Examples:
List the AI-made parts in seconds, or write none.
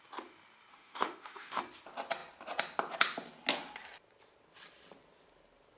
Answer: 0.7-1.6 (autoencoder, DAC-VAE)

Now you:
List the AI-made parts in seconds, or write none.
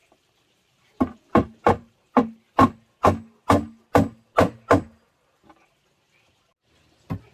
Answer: 0.0-2.1 (vocoder, BigVGAN v2)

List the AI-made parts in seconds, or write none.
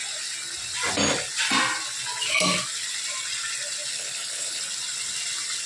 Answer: 3.9-4.6 (codec, HILCodec)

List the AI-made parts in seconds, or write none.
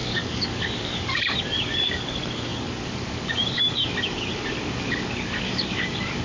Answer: 0.0-6.2 (codec, DAC)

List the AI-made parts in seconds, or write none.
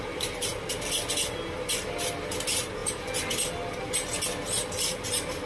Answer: none